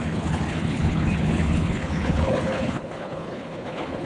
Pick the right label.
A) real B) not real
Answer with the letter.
B